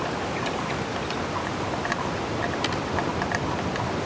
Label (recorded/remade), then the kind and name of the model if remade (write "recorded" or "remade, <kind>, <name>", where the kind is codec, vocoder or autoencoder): recorded